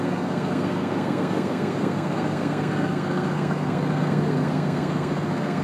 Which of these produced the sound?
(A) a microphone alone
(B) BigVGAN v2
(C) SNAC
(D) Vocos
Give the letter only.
C